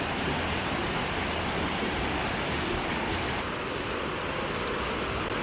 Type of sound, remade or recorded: recorded